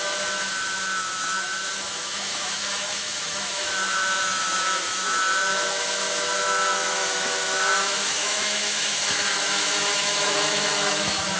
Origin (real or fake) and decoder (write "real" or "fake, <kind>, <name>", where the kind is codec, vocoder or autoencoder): fake, autoencoder, DAC-VAE